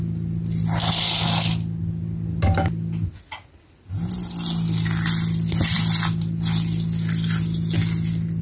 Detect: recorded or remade recorded